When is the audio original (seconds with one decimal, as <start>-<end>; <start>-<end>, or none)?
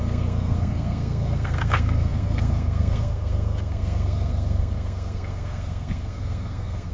none